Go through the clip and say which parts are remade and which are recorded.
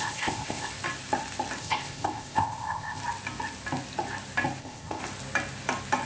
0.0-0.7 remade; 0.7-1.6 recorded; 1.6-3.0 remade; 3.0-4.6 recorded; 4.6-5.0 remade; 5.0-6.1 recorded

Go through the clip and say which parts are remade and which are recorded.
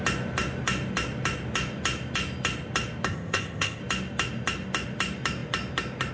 0.0-3.1 recorded; 3.1-3.8 remade; 3.8-6.1 recorded